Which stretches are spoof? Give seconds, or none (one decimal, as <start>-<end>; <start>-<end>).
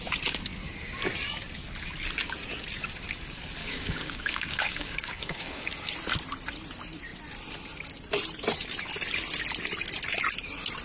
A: 3.6-5.7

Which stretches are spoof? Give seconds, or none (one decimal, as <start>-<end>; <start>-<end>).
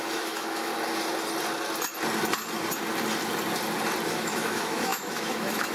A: 0.0-0.7; 4.1-5.7